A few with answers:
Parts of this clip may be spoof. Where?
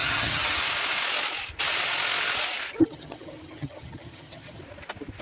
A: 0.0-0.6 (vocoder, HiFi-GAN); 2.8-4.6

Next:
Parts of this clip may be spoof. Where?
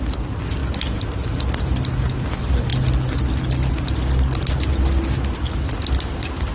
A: none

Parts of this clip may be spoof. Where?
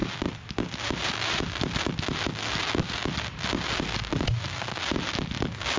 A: none